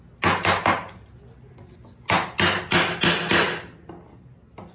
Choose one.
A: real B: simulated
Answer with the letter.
A